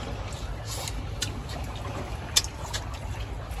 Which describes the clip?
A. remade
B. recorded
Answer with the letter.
B